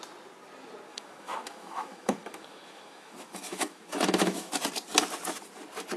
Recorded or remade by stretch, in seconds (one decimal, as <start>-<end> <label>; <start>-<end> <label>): 0.0-0.9 recorded; 0.9-4.5 remade; 4.5-6.0 recorded